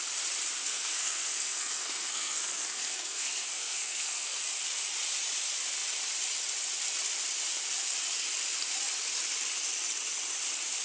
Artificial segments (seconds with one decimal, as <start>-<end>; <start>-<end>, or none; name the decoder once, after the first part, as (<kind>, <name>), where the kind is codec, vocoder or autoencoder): 0.6-4.4 (codec, SNAC)